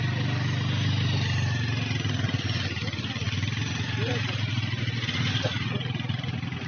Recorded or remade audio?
recorded